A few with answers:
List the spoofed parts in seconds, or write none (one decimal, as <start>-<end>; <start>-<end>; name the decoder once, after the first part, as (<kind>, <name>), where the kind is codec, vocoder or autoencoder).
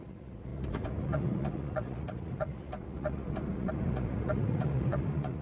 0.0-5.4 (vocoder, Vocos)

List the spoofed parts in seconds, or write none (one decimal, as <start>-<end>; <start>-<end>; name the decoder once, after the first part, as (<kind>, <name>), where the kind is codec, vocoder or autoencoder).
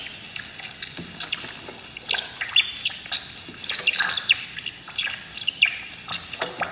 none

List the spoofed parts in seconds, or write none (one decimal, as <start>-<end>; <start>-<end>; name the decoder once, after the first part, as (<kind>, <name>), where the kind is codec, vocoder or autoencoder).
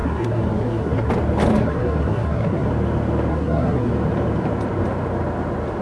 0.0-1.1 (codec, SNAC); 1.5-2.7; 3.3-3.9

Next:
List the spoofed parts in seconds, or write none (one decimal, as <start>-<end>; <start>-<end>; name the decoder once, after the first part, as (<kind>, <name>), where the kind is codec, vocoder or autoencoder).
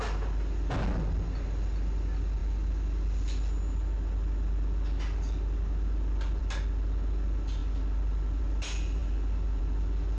none